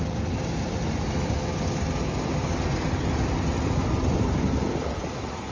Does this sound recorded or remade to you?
recorded